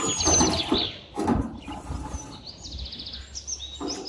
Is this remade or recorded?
recorded